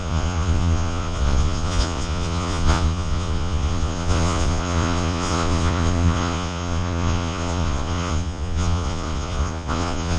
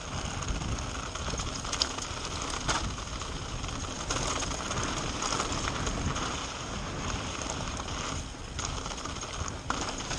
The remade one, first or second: first